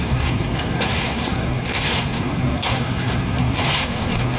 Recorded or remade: remade